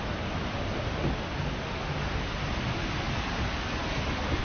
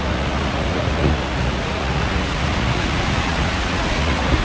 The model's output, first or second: second